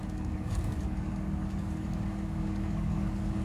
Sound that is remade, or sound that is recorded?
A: remade